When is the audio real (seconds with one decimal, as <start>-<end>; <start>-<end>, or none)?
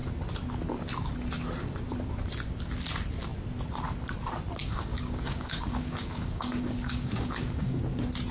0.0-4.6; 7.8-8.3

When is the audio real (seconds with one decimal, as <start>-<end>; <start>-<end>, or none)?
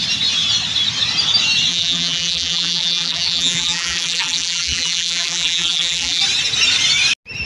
0.0-1.7; 6.2-7.5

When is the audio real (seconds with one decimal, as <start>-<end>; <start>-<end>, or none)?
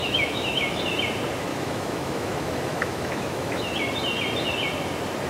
0.8-1.5; 3.6-5.3